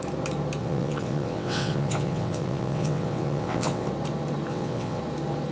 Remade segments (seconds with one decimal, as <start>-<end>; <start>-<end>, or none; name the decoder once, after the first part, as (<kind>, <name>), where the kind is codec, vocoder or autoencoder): 0.6-3.9 (vocoder, WaveNeXt); 4.5-5.0